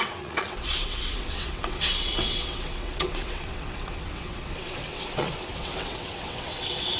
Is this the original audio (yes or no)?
no